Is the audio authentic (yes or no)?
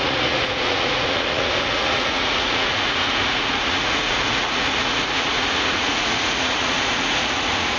no